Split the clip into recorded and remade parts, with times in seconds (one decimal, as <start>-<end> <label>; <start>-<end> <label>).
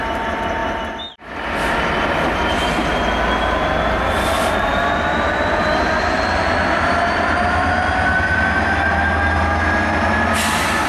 0.0-10.9 recorded